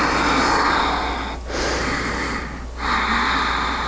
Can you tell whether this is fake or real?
real